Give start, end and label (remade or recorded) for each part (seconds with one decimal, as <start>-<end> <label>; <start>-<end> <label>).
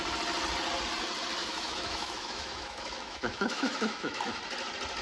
0.0-1.4 recorded; 1.4-4.4 remade; 4.4-5.0 recorded